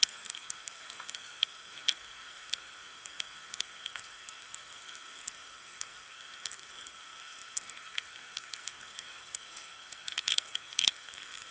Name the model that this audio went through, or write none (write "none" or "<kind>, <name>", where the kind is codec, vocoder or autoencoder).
codec, SNAC